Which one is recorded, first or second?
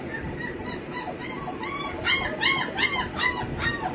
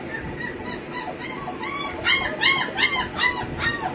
second